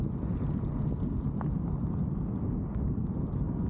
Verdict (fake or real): real